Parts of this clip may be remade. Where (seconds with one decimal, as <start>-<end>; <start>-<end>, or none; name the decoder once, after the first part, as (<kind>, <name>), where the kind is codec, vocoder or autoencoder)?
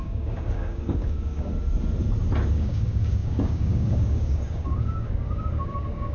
0.0-1.5 (codec, DAC); 2.5-6.1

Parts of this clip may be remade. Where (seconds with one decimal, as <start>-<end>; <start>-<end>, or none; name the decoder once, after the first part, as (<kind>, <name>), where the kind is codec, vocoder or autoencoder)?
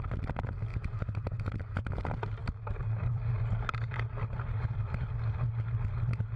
0.7-1.9 (vocoder, BigVGAN v2); 2.4-3.2; 4.2-5.0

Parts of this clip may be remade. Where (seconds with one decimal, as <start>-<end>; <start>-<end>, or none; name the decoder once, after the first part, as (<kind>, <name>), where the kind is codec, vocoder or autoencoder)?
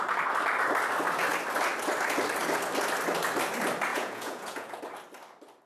3.9-4.8 (vocoder, Vocos)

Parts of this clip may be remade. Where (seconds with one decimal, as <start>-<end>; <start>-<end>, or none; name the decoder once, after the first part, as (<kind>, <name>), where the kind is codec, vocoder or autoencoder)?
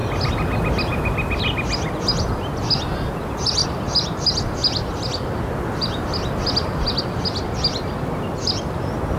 none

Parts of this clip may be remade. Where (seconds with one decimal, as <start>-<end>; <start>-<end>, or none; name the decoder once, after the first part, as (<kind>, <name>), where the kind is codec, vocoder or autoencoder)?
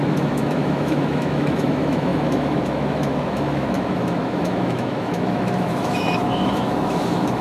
0.0-7.4 (autoencoder, DAC-VAE)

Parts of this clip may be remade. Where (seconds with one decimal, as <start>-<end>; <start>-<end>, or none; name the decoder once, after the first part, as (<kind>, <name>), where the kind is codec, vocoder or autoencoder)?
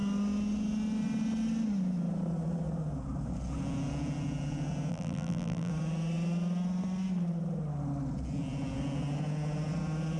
4.9-5.7 (vocoder, BigVGAN v2)